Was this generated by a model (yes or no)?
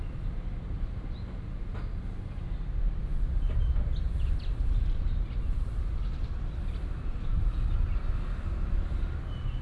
no